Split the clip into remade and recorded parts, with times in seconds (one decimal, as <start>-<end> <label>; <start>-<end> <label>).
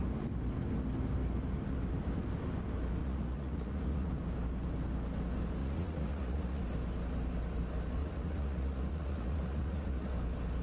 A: 0.0-3.0 recorded; 3.0-4.1 remade; 4.1-5.6 recorded; 5.6-6.6 remade; 6.6-8.0 recorded; 8.0-10.1 remade; 10.1-10.6 recorded